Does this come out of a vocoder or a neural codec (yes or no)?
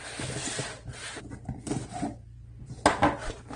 no